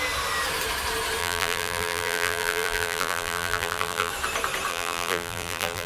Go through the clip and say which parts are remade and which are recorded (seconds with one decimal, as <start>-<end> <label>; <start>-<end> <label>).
0.0-1.2 recorded; 1.2-4.1 remade; 4.1-4.7 recorded; 4.7-5.9 remade